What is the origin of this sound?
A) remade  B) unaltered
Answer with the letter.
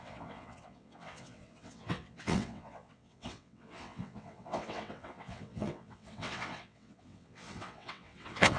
A